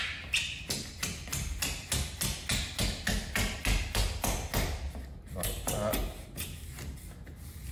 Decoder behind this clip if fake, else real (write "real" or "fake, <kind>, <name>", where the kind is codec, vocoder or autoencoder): real